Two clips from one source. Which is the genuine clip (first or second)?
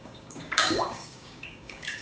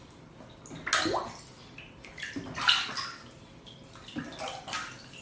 second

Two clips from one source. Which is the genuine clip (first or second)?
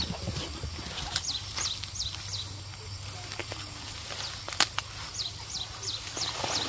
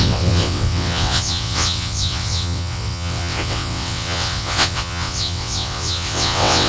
first